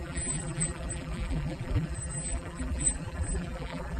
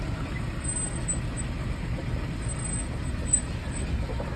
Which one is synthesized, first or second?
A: first